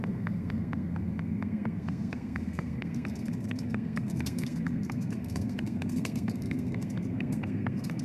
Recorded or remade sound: remade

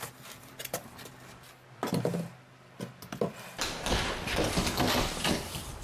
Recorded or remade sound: recorded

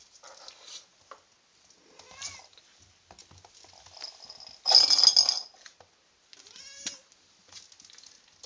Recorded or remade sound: recorded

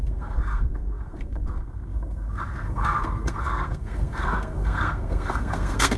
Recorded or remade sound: remade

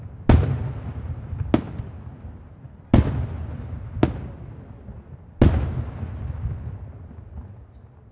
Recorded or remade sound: recorded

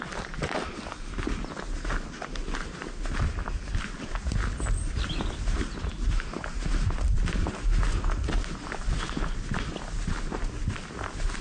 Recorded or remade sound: recorded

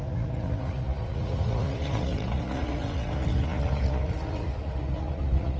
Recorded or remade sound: remade